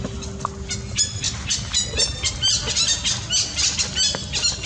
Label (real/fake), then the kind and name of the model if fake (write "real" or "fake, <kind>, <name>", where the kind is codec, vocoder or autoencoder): real